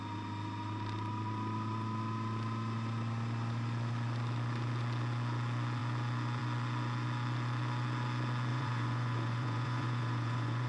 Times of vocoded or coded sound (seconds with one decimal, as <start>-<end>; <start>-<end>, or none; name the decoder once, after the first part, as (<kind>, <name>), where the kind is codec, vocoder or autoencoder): 8.5-10.7 (vocoder, Vocos)